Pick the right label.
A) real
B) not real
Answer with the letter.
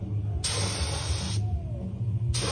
A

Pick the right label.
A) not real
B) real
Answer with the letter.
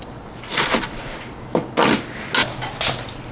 B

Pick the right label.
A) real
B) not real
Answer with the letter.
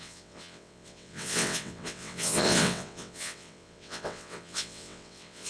B